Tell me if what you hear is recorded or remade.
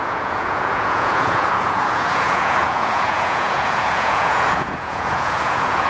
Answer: remade